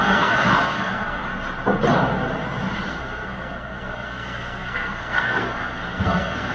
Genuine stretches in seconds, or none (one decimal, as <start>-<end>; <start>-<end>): 1.2-2.9